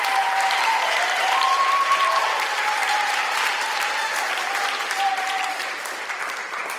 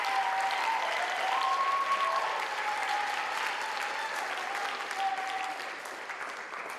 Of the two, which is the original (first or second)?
second